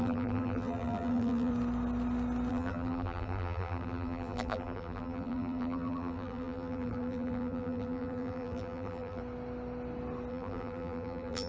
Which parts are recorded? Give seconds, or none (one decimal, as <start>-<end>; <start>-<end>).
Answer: 1.5-2.5; 9.2-10.3